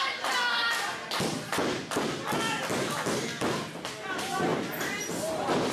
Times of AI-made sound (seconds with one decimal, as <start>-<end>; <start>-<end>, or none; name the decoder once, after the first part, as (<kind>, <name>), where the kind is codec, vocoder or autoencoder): 4.5-5.1 (vocoder, BigVGAN v2)

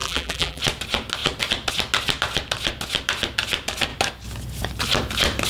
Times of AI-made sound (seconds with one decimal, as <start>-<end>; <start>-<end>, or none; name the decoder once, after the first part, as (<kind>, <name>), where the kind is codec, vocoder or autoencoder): 0.0-0.6 (vocoder, BigVGAN v2)